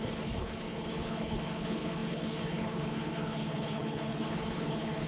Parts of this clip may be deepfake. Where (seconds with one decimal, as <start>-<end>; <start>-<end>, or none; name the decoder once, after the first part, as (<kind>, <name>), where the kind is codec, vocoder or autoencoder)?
0.0-5.1 (codec, HILCodec)

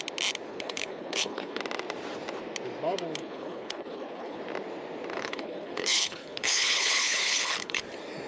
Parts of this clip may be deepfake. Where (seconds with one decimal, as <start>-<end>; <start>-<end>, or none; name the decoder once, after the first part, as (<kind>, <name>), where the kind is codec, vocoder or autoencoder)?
0.5-1.6 (codec, HILCodec); 3.2-4.4; 5.1-7.8

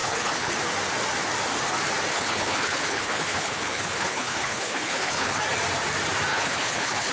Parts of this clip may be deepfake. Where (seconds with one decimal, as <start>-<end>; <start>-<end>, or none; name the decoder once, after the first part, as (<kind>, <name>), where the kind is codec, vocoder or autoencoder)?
0.0-0.5 (codec, HILCodec); 2.1-5.4; 6.3-7.1

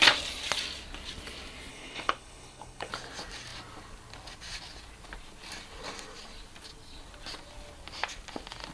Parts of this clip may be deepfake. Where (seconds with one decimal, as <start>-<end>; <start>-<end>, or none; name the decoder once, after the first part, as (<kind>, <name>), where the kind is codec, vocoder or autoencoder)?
1.7-2.9 (codec, HILCodec)